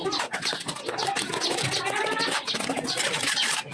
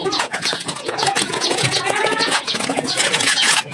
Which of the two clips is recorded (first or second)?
first